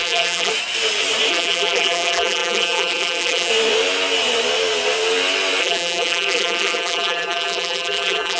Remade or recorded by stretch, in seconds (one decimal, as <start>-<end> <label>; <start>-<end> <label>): 0.0-0.5 remade; 0.5-1.3 recorded; 1.3-3.5 remade; 3.5-5.6 recorded; 5.6-8.4 remade